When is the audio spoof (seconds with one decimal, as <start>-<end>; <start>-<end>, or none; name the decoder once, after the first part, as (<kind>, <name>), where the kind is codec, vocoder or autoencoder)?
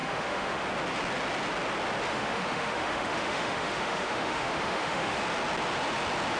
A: 0.0-0.6 (autoencoder, DAC-VAE); 2.1-5.2